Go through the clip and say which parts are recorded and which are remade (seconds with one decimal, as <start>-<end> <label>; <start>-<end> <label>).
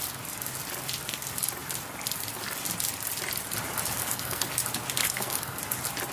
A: 0.0-4.0 recorded; 4.0-4.5 remade; 4.5-5.0 recorded; 5.0-5.6 remade; 5.6-6.1 recorded